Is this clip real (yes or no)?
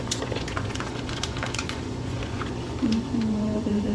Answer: no